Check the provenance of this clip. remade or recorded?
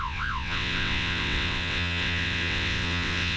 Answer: remade